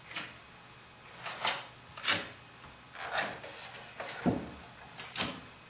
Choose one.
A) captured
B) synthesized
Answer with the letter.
A